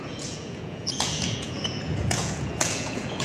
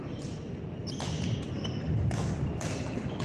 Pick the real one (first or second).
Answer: second